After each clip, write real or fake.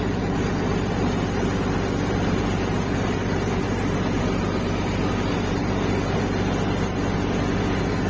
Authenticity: real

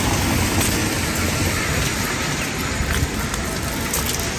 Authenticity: real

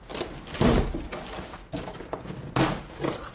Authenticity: real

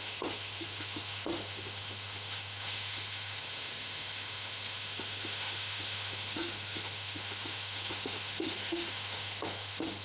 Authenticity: fake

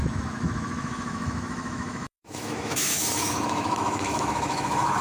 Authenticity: fake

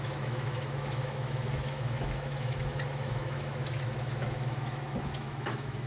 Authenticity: fake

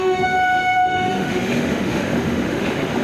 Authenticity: fake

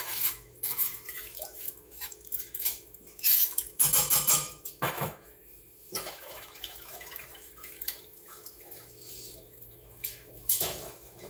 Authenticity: fake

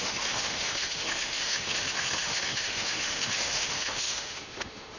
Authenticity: fake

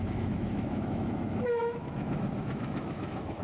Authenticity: fake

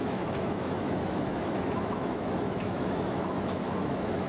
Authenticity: fake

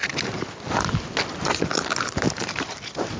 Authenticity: real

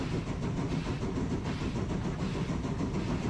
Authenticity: real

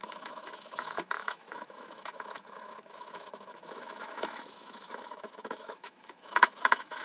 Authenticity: fake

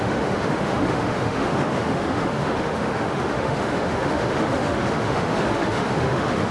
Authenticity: fake